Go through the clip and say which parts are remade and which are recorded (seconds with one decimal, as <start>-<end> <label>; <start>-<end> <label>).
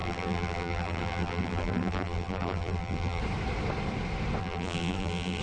0.0-3.2 remade; 3.2-4.4 recorded; 4.4-5.4 remade